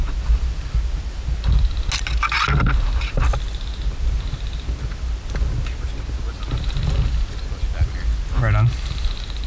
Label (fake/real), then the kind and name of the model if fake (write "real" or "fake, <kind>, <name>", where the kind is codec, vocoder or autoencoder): real